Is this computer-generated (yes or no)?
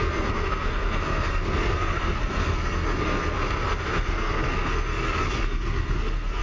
yes